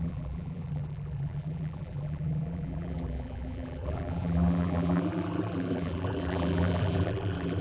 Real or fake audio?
fake